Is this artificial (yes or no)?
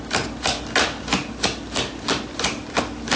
no